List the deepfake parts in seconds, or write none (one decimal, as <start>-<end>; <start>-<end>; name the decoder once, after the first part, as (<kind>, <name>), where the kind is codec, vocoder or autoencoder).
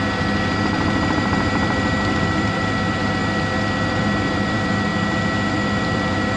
0.0-3.2 (vocoder, BigVGAN v2); 3.9-4.9; 5.5-6.4